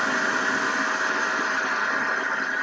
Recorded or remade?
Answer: recorded